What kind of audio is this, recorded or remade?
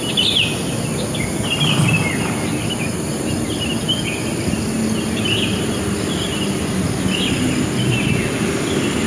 recorded